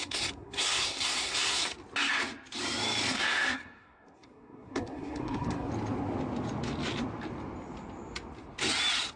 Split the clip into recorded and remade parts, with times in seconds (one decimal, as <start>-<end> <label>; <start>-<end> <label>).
0.0-1.6 remade; 1.6-3.1 recorded; 3.1-5.7 remade; 5.7-9.2 recorded